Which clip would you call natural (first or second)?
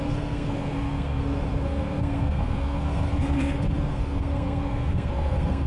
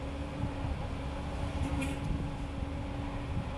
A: second